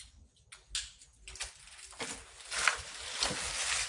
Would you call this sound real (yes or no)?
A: yes